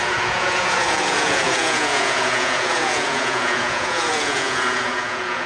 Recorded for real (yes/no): no